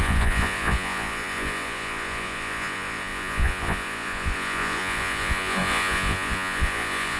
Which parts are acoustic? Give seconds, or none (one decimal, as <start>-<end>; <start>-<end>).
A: none